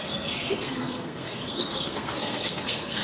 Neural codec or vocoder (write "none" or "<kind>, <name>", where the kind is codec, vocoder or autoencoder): codec, SNAC